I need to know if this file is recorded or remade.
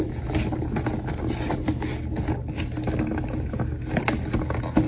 recorded